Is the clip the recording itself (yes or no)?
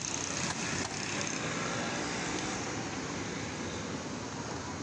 yes